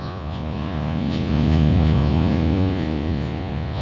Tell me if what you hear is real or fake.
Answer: fake